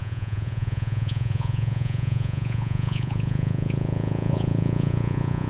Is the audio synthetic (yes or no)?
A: yes